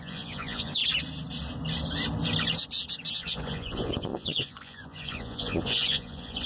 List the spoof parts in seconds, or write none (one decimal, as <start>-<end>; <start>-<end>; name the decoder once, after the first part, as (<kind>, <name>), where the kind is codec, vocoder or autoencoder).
0.0-0.8 (vocoder, Vocos); 3.1-6.5